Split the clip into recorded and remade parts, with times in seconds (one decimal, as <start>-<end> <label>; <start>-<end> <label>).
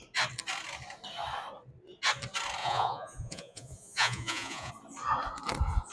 0.0-2.6 recorded; 2.6-4.7 remade; 4.7-5.9 recorded